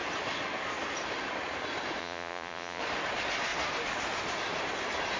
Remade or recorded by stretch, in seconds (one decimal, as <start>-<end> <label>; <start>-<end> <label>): 0.0-2.0 recorded; 2.0-2.8 remade; 2.8-5.2 recorded

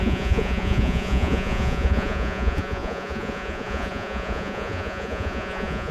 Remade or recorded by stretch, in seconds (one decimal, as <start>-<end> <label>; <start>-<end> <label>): 0.0-5.9 remade